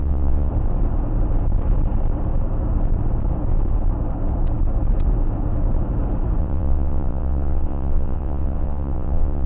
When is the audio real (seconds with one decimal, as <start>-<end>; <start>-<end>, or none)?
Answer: 0.5-6.4